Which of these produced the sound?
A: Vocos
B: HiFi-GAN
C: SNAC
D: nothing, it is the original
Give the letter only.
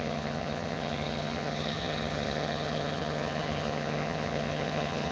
B